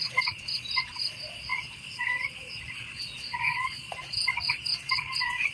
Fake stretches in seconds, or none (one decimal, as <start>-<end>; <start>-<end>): 0.0-5.5